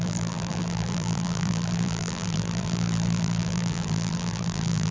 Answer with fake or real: fake